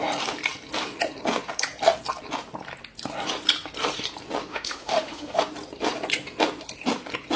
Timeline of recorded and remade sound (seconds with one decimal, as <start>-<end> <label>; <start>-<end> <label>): 0.0-4.5 recorded; 4.5-5.4 remade; 5.4-7.4 recorded